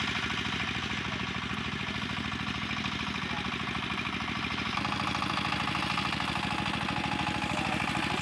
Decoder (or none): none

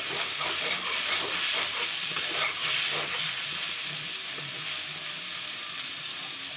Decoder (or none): none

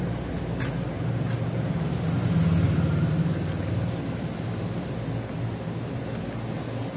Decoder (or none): none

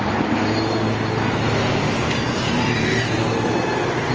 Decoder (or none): none